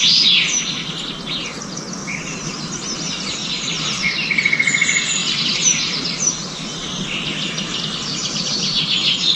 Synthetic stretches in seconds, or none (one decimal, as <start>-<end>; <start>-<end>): 2.0-2.6; 3.4-4.0; 8.1-9.4